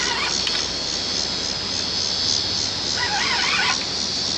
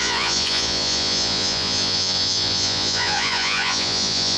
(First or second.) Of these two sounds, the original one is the first